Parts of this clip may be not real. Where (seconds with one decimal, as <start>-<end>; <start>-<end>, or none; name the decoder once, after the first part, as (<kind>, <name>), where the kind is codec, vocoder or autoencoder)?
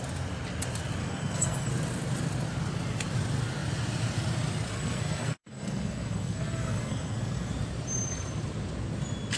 1.0-1.7 (codec, SNAC); 4.7-7.5